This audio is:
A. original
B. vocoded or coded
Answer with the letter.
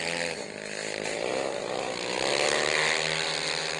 A